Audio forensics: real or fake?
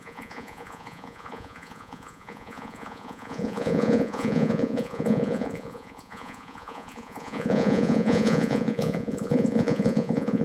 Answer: fake